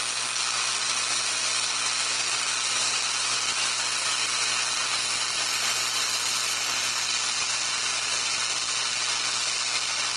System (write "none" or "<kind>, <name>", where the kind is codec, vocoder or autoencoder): none